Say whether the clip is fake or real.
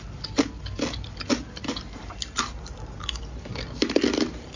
real